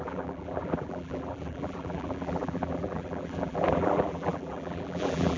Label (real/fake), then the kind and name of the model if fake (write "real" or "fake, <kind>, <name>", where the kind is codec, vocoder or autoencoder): fake, vocoder, BigVGAN v2